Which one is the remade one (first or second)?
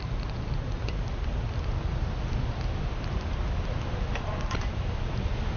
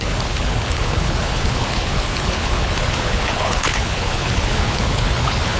second